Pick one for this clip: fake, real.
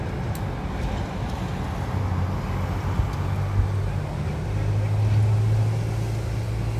real